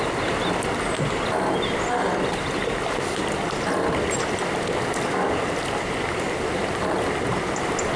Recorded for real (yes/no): yes